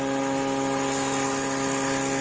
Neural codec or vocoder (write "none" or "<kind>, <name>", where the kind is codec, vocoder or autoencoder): none